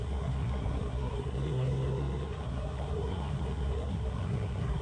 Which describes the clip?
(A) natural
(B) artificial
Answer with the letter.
B